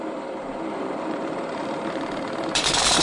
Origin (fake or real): fake